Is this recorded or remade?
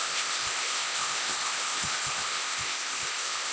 remade